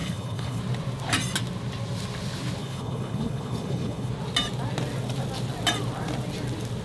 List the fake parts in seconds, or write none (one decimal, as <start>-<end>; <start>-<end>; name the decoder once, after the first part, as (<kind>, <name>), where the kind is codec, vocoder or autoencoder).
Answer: 0.0-0.6 (codec, HILCodec); 2.6-4.1